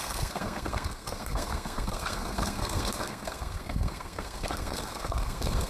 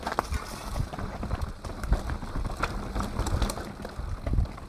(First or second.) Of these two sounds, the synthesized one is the first